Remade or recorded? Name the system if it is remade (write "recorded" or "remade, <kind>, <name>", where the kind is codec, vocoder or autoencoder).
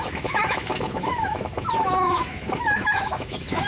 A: remade, autoencoder, DAC-VAE